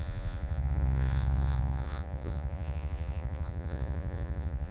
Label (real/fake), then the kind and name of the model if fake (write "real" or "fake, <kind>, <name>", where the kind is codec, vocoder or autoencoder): fake, vocoder, Vocos